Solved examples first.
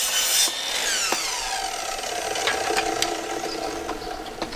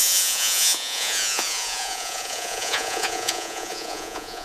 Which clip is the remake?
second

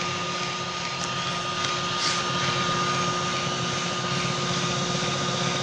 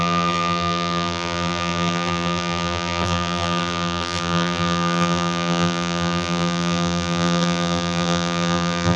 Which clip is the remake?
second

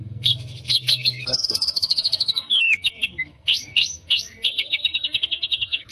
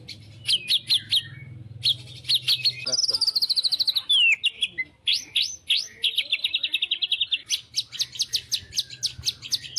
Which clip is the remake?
first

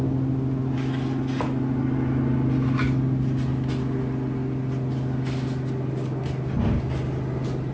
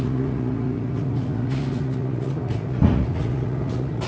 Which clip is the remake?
second